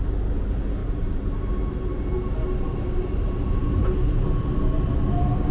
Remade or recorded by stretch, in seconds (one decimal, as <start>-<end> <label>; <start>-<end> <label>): 0.0-0.8 recorded; 0.8-1.3 remade; 1.3-5.5 recorded